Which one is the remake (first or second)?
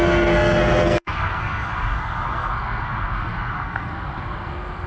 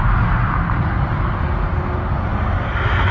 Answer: first